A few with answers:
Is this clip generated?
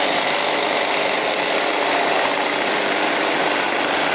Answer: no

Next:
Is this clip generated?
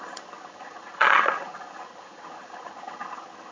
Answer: yes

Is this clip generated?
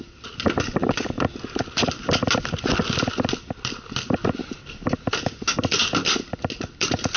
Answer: no